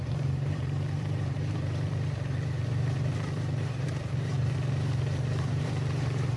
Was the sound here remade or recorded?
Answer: remade